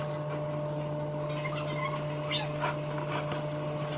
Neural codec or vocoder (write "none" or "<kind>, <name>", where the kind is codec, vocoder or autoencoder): none